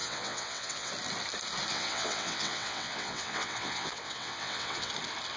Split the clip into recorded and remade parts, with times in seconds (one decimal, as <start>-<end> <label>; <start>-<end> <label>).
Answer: 0.0-0.9 remade; 0.9-1.7 recorded; 1.7-4.9 remade; 4.9-5.4 recorded